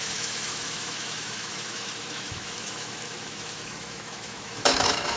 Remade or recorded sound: remade